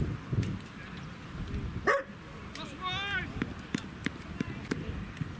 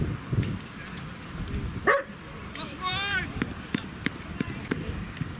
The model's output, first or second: second